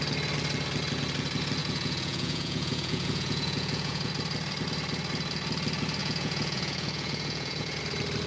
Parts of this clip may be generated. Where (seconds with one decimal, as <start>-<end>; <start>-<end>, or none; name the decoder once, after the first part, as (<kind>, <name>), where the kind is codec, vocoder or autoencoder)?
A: 1.6-4.1 (vocoder, Vocos); 6.0-7.8